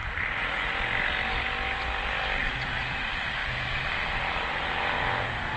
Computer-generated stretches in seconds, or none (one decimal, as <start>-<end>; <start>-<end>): 0.0-0.7